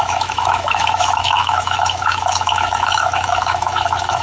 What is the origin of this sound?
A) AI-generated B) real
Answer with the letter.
A